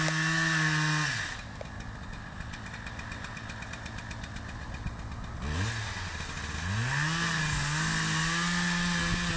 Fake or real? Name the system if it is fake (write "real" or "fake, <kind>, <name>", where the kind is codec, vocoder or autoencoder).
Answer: real